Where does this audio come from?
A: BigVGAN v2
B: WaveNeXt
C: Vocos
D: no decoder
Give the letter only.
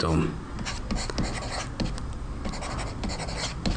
D